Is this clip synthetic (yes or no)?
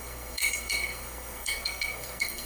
yes